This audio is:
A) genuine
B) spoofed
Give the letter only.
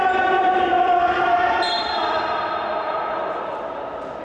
B